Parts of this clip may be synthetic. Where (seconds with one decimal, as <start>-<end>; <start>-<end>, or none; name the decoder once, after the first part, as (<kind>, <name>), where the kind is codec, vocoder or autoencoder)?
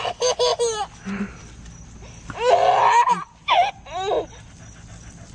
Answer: none